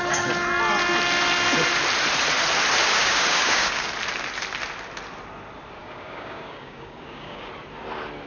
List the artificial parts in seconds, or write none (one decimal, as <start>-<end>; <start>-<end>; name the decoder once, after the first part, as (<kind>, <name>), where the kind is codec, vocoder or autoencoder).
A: 2.8-3.9 (codec, DAC); 5.8-7.5